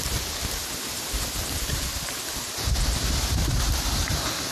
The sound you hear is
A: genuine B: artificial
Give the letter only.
A